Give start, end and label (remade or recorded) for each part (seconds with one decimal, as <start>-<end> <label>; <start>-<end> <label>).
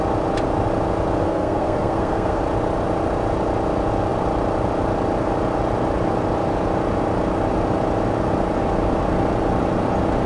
0.0-1.2 recorded; 1.2-2.4 remade; 2.4-10.3 recorded